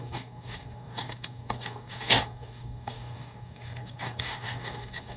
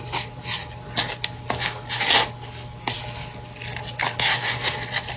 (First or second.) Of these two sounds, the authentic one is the second